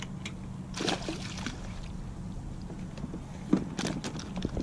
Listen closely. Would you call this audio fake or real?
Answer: real